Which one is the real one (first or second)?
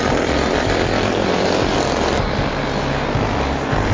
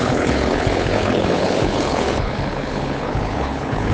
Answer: first